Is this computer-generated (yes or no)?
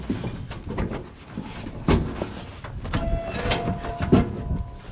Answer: no